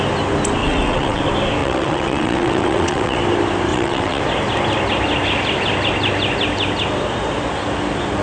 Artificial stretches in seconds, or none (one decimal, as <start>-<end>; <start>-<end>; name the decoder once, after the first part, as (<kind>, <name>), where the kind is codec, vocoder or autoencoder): 0.6-1.2 (vocoder, WaveNeXt); 1.6-3.2; 3.7-4.2